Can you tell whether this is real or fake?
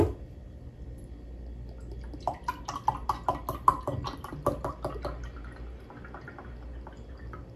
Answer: real